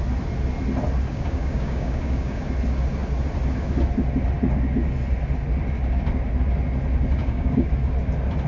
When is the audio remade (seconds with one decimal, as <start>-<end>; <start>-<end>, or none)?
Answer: 1.1-2.4; 7.2-7.7